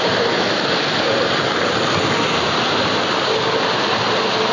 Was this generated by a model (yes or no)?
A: no